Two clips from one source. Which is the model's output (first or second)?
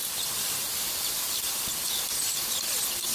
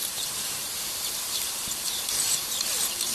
second